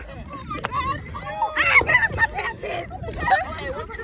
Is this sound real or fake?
real